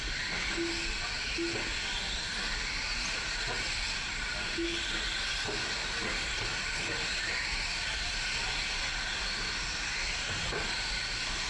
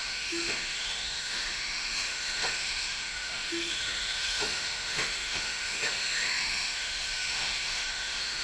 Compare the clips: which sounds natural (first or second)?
first